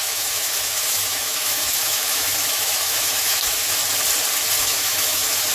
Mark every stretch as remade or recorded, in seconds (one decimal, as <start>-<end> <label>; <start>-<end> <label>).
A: 0.0-3.8 remade; 3.8-4.6 recorded; 4.6-5.5 remade